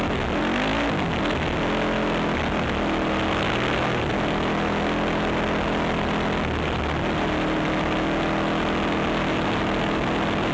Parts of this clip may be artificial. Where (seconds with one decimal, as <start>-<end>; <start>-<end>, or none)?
none